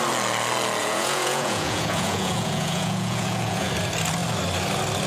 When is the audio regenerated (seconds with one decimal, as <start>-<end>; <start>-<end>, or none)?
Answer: 0.8-3.7